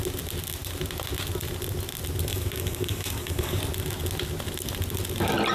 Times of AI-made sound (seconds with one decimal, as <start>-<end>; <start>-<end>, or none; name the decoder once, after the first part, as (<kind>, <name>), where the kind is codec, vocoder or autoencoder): 2.3-3.6 (codec, DAC)